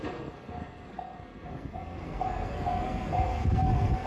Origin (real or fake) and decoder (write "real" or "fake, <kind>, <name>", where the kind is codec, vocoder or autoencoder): fake, codec, SNAC